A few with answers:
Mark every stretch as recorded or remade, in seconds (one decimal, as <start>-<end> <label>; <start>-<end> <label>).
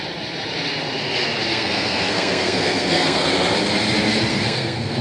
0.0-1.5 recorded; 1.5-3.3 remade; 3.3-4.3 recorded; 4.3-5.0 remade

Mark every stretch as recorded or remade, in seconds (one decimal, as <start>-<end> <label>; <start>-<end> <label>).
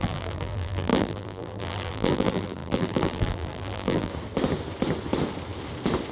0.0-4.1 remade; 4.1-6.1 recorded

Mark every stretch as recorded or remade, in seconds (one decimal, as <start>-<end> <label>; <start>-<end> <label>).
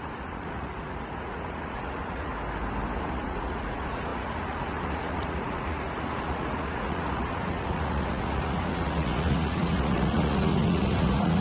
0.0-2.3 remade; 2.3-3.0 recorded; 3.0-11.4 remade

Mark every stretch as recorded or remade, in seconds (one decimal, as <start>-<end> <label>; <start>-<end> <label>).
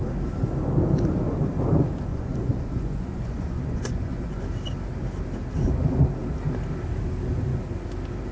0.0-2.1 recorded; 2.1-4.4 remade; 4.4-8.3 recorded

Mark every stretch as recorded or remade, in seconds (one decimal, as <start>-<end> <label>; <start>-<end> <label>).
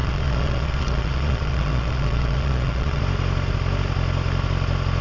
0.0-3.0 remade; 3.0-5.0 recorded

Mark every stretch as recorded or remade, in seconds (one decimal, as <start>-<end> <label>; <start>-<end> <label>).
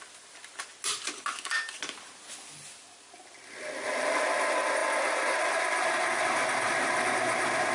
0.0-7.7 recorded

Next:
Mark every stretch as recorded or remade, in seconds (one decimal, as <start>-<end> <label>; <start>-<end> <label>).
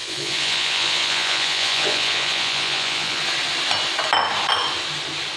0.0-3.2 remade; 3.2-5.4 recorded